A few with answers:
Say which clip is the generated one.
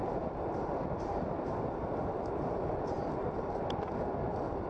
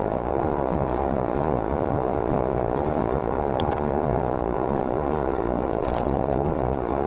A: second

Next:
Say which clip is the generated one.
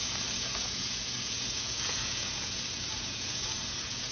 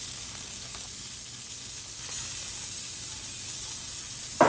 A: first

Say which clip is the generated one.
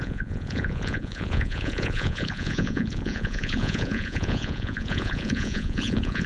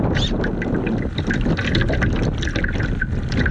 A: first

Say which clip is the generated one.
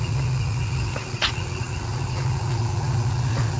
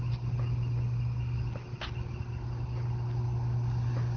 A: first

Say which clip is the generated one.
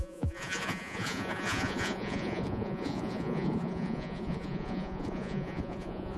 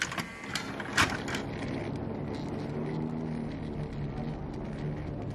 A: first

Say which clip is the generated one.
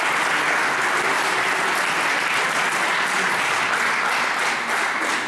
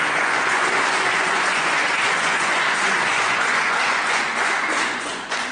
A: second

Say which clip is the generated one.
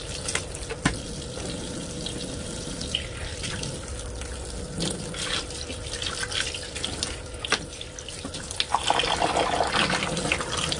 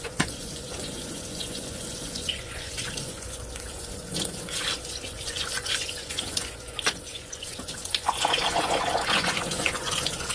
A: second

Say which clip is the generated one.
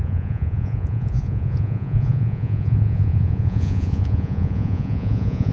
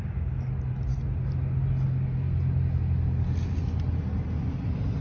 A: first